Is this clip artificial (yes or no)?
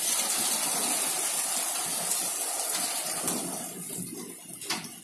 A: no